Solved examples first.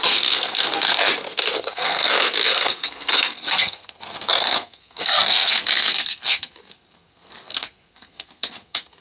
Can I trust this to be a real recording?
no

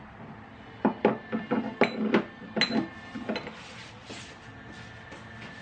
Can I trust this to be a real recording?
yes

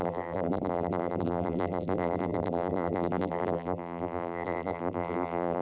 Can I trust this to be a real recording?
no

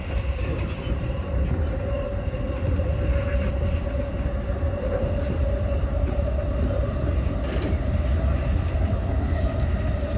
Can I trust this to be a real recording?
yes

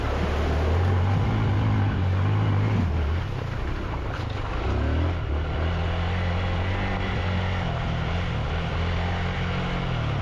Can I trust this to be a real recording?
yes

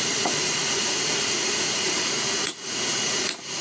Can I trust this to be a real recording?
no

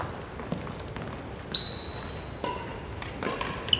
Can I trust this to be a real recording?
yes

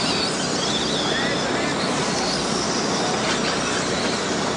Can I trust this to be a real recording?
yes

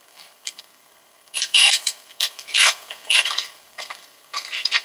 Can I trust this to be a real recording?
no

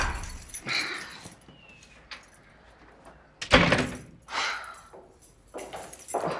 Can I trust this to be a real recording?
yes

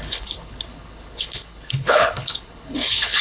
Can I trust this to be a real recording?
no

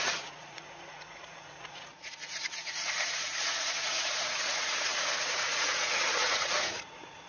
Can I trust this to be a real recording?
no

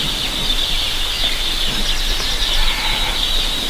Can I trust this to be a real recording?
yes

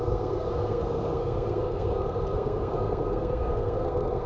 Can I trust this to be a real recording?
no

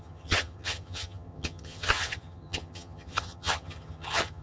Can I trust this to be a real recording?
no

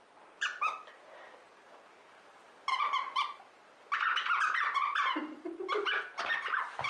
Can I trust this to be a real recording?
yes